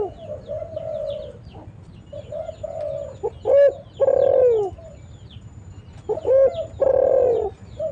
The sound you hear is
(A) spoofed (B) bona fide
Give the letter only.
B